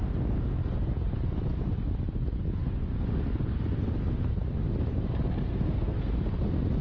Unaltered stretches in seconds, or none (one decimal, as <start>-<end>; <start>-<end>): 0.0-5.5; 6.1-6.8